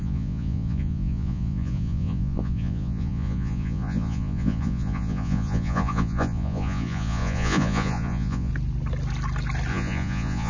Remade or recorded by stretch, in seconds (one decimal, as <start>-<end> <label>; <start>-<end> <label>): 0.0-8.5 remade; 8.5-9.7 recorded; 9.7-10.5 remade